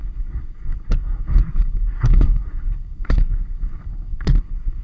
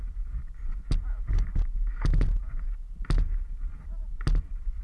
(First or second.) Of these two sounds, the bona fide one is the second